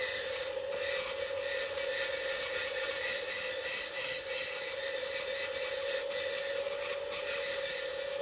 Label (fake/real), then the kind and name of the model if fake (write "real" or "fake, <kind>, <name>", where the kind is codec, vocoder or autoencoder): real